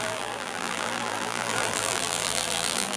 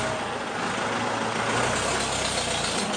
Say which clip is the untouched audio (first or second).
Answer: second